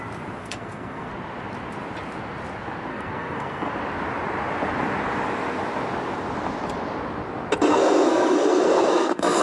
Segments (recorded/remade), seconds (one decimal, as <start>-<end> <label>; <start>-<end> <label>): 0.0-0.4 recorded; 0.4-1.1 remade; 1.1-2.9 recorded; 2.9-3.7 remade; 3.7-7.7 recorded; 7.7-9.4 remade